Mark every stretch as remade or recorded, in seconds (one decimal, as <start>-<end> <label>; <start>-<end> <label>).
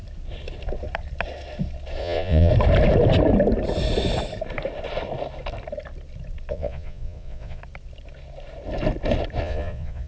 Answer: 0.0-2.0 recorded; 2.0-2.5 remade; 2.5-6.5 recorded; 6.5-7.6 remade; 7.6-9.4 recorded; 9.4-10.1 remade